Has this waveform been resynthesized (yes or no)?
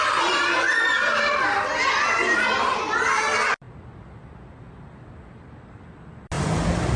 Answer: no